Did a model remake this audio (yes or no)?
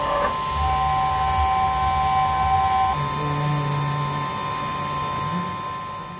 no